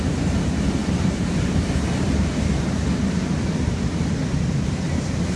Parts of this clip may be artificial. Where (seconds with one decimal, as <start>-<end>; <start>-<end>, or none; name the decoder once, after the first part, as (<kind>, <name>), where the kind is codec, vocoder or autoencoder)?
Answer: 0.8-2.3 (vocoder, BigVGAN v2); 4.2-5.4